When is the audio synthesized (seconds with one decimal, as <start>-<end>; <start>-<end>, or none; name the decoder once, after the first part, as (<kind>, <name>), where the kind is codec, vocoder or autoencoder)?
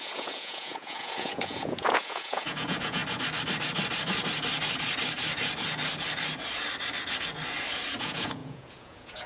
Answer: 0.0-3.0 (vocoder, Vocos); 8.0-9.3